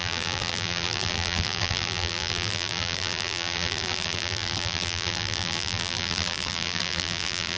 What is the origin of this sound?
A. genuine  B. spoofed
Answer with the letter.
B